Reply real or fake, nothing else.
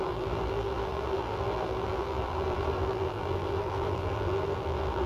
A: fake